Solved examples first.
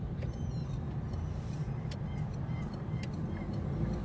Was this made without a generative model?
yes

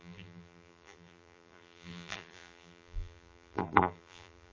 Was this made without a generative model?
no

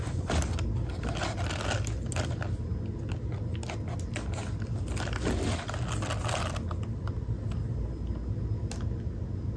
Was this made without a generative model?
yes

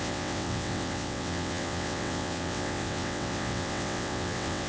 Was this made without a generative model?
no